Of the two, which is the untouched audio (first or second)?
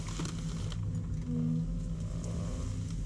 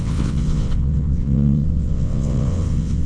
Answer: first